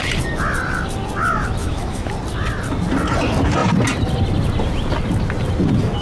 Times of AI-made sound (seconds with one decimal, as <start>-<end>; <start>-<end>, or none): 1.6-2.1